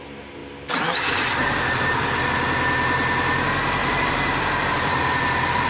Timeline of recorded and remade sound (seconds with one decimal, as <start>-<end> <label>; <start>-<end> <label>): 0.0-3.8 recorded; 3.8-5.2 remade; 5.2-5.7 recorded